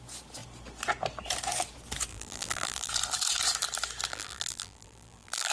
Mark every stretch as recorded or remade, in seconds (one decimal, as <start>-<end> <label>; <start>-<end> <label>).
0.0-2.1 recorded; 2.1-2.9 remade; 2.9-4.1 recorded; 4.1-5.5 remade